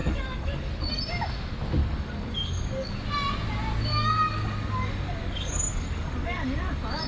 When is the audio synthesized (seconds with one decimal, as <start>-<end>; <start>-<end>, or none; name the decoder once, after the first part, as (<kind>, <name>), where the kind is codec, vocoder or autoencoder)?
0.0-0.7 (codec, DAC); 1.8-2.9; 3.9-7.1